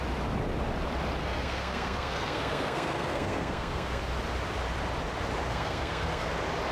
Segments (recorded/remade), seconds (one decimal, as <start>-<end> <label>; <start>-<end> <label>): 0.0-1.2 recorded; 1.2-4.0 remade; 4.0-5.5 recorded; 5.5-6.3 remade; 6.3-6.7 recorded